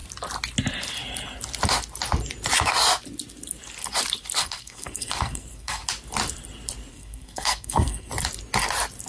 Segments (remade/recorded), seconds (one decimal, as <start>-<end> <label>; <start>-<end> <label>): 0.0-4.4 recorded; 4.4-5.8 remade; 5.8-6.9 recorded; 6.9-8.1 remade; 8.1-9.1 recorded